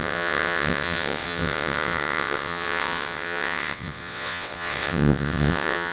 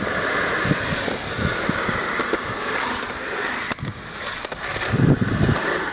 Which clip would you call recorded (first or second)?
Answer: second